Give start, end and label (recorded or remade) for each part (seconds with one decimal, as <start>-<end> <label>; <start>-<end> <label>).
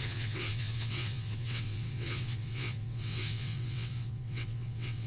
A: 0.0-5.1 remade